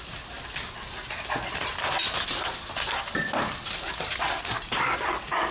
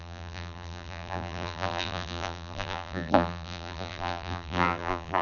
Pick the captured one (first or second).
first